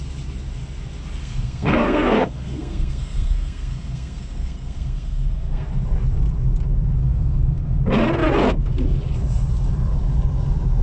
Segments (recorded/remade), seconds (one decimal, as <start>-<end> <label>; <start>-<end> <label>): 0.0-1.2 recorded; 1.2-5.7 remade; 5.7-7.0 recorded; 7.0-7.8 remade; 7.8-10.8 recorded